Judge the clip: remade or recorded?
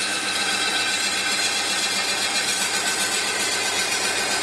recorded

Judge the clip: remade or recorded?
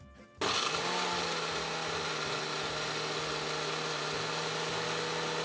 recorded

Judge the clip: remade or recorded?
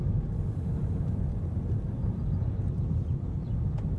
remade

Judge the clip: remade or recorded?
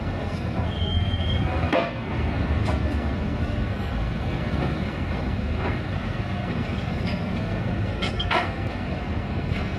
remade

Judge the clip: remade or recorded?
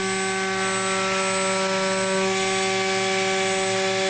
recorded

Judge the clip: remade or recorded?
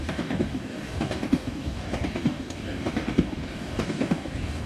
remade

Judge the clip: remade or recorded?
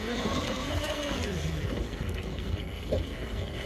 remade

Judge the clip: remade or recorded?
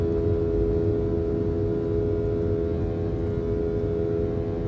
recorded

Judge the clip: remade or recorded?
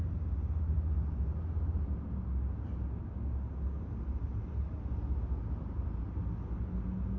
recorded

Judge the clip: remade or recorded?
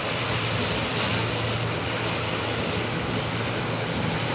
recorded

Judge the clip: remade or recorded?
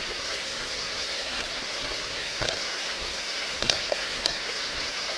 remade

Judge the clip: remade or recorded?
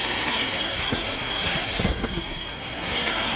remade